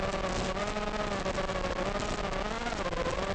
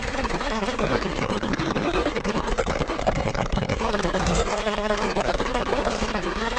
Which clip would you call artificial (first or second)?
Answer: second